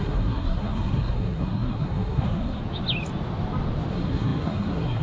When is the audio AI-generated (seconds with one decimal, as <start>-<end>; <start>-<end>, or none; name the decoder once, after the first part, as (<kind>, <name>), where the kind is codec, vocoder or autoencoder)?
0.0-2.6 (codec, SNAC); 3.9-5.0